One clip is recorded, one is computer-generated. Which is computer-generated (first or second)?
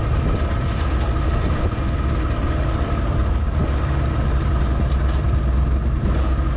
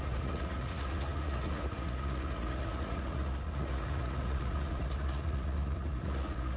second